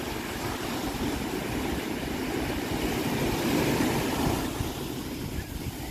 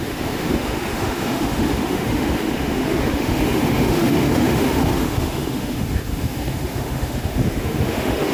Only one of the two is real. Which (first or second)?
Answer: first